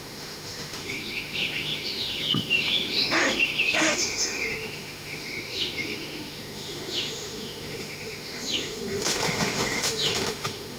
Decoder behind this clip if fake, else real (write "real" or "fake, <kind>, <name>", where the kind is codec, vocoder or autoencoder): fake, autoencoder, DAC-VAE